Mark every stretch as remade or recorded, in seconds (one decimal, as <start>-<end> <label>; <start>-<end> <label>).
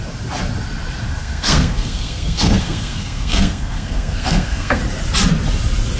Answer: 0.0-1.2 recorded; 1.2-4.8 remade; 4.8-6.0 recorded